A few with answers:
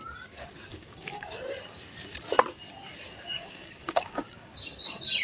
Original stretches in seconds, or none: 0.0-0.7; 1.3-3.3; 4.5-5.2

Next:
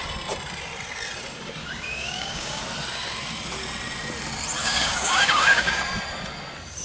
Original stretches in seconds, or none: 0.0-1.6; 2.6-4.6; 5.8-6.8

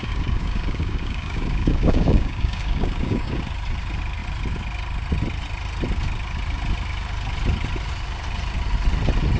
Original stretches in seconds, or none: 3.4-9.4

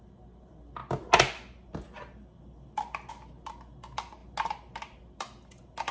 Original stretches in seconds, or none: 0.0-5.9